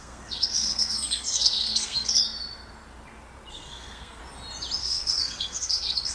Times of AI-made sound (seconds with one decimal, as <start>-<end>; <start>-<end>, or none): 0.0-2.2; 3.5-4.2; 4.8-6.1